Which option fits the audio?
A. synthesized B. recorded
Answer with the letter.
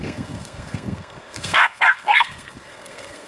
A